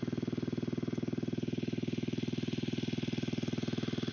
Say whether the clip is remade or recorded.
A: recorded